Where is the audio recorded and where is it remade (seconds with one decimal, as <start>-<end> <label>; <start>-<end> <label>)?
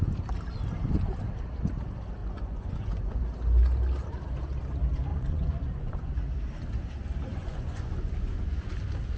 0.0-2.2 recorded; 2.2-3.2 remade; 3.2-5.1 recorded; 5.1-6.1 remade; 6.1-7.3 recorded; 7.3-8.7 remade; 8.7-9.2 recorded